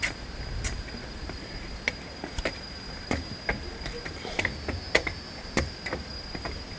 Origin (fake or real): real